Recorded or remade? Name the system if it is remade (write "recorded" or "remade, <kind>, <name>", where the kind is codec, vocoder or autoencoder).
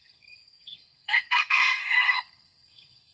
remade, codec, SNAC